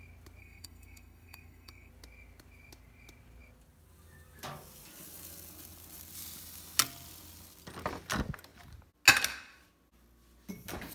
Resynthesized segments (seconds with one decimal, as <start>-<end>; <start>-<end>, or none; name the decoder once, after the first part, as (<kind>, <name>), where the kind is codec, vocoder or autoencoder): 0.4-1.9 (codec, SNAC)